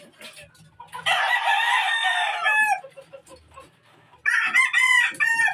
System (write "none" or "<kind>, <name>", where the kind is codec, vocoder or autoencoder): none